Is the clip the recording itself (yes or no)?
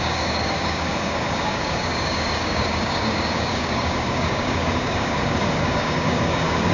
no